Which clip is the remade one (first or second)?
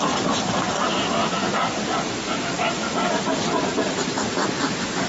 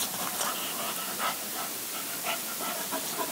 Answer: second